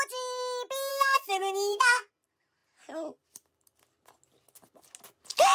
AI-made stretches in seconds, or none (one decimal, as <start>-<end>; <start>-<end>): 0.9-2.1